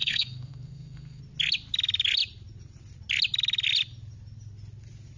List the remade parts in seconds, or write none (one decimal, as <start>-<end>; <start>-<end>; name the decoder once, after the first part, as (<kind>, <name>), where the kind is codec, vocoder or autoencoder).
0.0-1.2 (codec, SNAC)